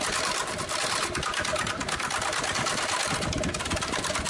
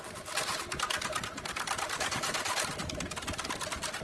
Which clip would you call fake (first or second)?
second